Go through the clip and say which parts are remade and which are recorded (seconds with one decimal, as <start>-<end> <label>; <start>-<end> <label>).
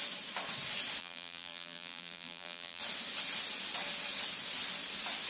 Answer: 0.0-1.0 recorded; 1.0-2.8 remade; 2.8-5.3 recorded